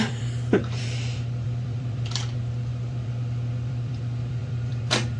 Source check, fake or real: fake